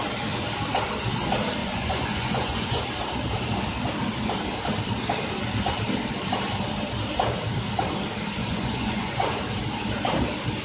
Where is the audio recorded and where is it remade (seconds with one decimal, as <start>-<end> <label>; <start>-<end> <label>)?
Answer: 0.0-1.6 recorded; 1.6-2.8 remade; 2.8-8.4 recorded; 8.4-9.4 remade; 9.4-10.6 recorded